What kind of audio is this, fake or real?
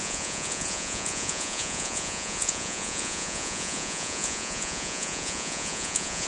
fake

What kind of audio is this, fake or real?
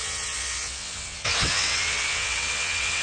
fake